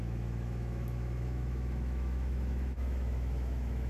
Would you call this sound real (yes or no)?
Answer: no